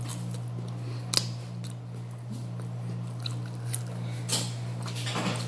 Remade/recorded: recorded